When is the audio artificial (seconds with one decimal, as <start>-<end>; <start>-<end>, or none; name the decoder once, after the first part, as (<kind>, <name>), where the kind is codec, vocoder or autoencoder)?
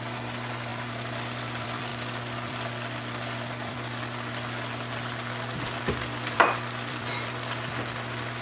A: 0.0-8.4 (vocoder, BigVGAN v2)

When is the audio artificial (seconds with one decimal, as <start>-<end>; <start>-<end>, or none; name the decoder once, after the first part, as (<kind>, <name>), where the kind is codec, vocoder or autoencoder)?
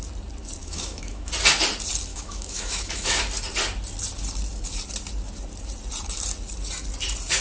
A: 0.6-1.3 (autoencoder, DAC-VAE); 2.1-3.2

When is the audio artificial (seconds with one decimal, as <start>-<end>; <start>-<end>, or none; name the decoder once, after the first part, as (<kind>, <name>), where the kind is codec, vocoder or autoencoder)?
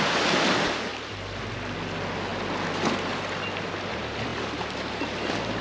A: none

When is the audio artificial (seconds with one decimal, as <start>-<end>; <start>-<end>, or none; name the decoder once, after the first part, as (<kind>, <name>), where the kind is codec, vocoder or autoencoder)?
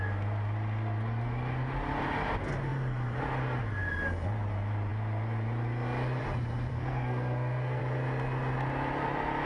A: 6.7-7.8 (codec, SNAC)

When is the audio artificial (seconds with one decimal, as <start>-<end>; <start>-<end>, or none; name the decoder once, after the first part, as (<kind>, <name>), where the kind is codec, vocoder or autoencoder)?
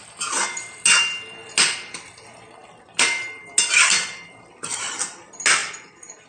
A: none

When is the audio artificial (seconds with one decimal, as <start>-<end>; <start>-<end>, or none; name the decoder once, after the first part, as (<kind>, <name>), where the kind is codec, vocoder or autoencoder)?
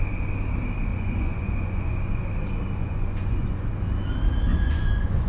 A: 0.9-2.3 (vocoder, Vocos); 2.8-3.7; 4.5-5.3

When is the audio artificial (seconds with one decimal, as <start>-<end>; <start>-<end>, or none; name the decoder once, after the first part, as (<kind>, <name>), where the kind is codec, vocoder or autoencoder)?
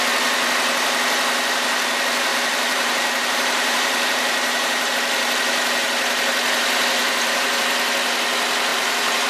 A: 2.3-4.9 (vocoder, BigVGAN v2); 7.0-7.6; 8.7-9.3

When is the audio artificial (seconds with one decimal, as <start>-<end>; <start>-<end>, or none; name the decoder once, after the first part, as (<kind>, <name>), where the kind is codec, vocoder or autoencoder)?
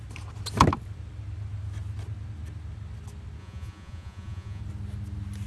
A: 3.4-4.6 (vocoder, Vocos)